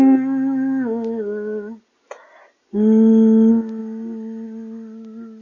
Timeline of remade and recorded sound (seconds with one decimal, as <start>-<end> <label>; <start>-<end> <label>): 0.0-5.4 recorded